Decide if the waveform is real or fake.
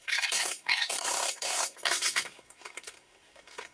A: fake